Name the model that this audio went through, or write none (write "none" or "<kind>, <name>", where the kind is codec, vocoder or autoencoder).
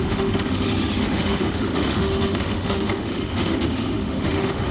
autoencoder, DAC-VAE